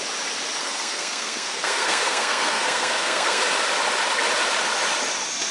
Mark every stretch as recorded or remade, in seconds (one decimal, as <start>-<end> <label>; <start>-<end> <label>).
0.0-0.6 recorded; 0.6-3.4 remade; 3.4-5.5 recorded

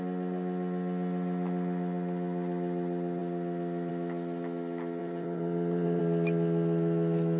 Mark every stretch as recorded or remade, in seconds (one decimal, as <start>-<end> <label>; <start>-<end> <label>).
0.0-5.0 recorded; 5.0-6.0 remade; 6.0-7.4 recorded

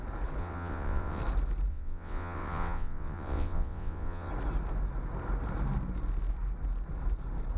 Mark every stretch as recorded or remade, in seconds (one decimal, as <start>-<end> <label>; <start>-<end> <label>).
0.0-0.4 recorded; 0.4-1.2 remade; 1.2-1.7 recorded; 1.7-4.3 remade; 4.3-7.6 recorded

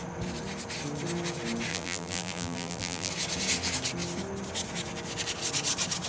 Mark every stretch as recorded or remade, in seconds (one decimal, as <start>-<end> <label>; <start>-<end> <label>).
0.0-1.7 recorded; 1.7-3.1 remade; 3.1-6.1 recorded

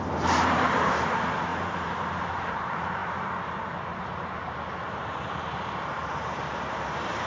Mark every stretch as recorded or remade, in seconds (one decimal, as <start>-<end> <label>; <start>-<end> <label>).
0.0-7.3 remade